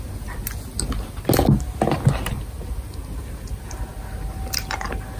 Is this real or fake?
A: real